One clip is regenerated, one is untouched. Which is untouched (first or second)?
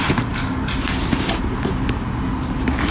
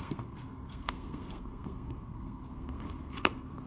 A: first